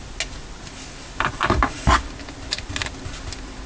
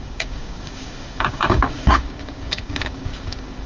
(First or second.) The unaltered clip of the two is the first